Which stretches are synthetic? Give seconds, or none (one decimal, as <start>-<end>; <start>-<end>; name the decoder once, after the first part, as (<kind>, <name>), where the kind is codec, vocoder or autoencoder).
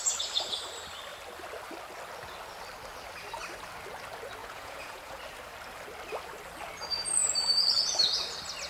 4.4-5.2 (vocoder, Vocos)